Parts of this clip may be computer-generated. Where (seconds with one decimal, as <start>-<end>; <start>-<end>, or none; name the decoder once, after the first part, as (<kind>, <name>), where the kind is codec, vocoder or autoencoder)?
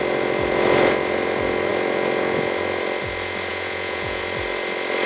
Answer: 3.5-4.2 (vocoder, Vocos)